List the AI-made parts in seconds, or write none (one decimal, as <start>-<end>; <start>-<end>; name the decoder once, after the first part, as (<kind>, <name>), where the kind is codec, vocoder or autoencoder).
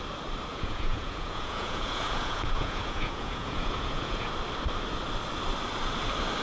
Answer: 0.5-4.3 (vocoder, Vocos)